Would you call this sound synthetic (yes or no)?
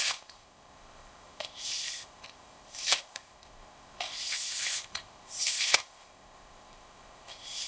yes